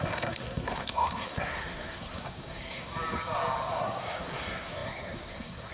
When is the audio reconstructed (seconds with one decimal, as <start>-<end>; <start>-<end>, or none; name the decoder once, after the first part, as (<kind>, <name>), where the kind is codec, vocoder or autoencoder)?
0.0-2.9 (codec, SNAC); 3.8-5.7